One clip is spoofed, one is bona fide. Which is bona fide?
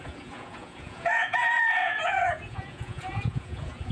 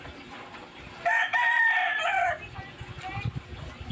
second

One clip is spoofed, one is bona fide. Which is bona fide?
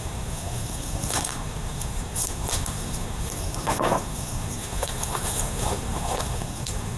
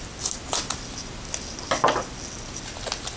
second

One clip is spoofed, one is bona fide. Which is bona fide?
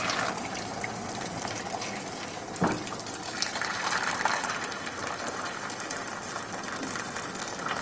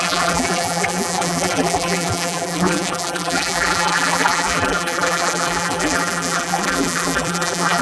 first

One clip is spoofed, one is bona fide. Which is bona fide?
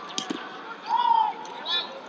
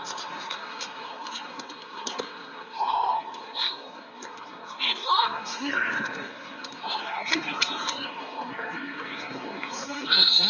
first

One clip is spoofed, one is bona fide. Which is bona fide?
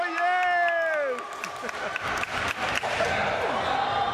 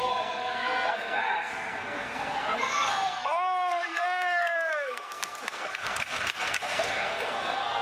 first